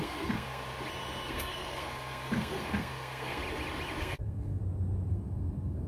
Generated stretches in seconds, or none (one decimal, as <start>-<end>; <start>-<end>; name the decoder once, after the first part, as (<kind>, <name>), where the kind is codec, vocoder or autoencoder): 0.0-0.6 (codec, SNAC); 1.3-3.4; 4.0-4.6; 5.1-5.9